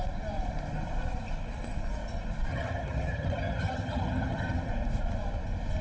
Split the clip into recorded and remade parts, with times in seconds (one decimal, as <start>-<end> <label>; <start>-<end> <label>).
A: 0.0-2.5 recorded; 2.5-4.7 remade; 4.7-5.8 recorded